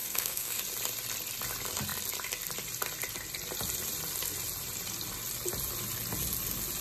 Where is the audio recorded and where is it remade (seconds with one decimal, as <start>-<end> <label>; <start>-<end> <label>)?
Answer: 0.0-0.6 remade; 0.6-6.8 recorded